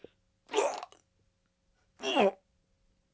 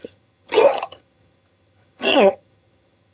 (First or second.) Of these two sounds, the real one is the first